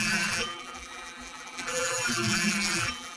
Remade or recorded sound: remade